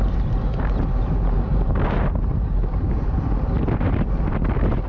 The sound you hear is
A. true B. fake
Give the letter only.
A